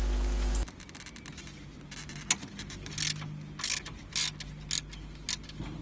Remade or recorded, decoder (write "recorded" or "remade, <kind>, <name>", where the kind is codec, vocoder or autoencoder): recorded